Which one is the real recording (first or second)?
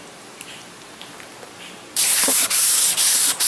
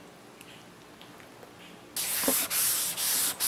second